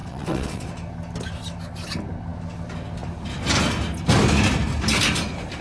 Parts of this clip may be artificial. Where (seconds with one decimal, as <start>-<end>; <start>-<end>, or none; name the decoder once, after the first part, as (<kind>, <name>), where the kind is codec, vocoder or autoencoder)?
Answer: 0.0-0.7 (vocoder, WaveNeXt)